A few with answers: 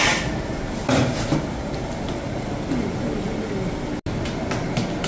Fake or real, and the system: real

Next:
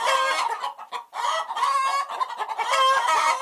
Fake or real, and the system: real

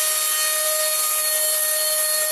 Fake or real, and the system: real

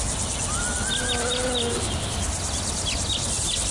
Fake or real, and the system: real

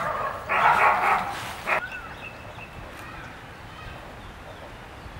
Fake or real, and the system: real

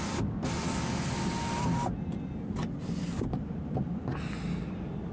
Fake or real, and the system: real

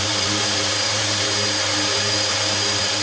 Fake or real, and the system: fake, vocoder, BigVGAN v2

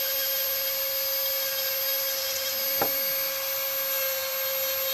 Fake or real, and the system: real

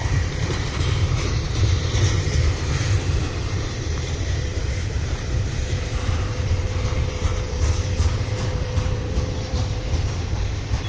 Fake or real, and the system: fake, vocoder, BigVGAN v2